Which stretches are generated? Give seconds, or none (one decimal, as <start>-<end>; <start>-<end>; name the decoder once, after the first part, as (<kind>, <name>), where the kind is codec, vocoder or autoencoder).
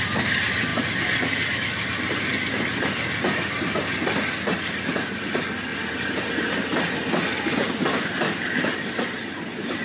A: 0.7-1.6 (vocoder, BigVGAN v2)